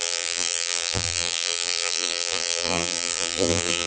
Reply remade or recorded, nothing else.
remade